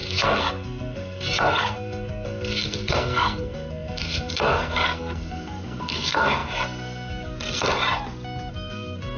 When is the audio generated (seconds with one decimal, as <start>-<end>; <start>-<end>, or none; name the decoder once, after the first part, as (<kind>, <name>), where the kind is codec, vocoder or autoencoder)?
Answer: 0.0-7.7 (codec, SNAC); 8.5-9.2